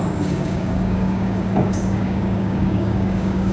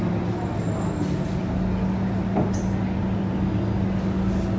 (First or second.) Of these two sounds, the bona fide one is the second